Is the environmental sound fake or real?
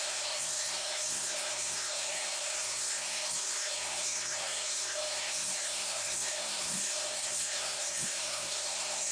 fake